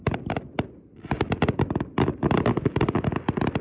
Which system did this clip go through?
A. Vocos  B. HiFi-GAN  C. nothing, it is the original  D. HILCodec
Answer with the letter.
C